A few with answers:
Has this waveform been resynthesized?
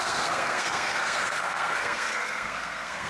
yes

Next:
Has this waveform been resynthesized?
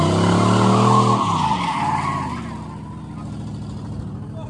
no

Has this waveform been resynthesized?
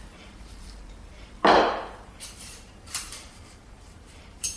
yes